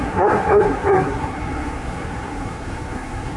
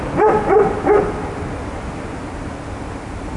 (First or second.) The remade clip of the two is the first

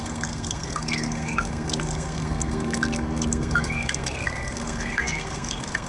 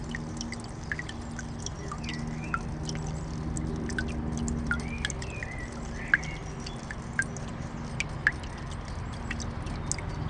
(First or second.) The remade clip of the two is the first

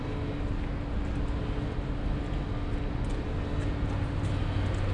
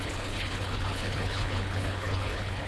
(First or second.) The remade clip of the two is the second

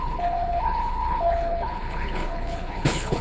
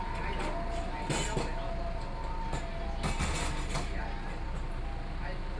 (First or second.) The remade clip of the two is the first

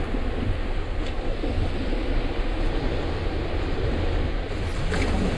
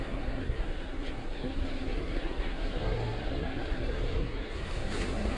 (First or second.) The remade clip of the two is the second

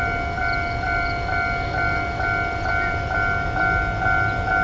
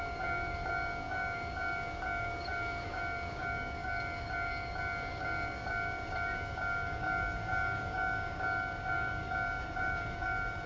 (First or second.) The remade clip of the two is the second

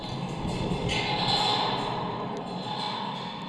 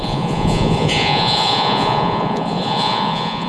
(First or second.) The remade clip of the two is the second